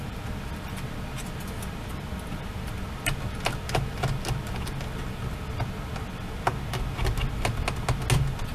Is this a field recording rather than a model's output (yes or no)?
yes